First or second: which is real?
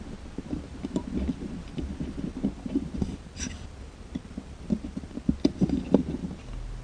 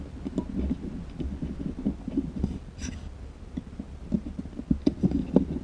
second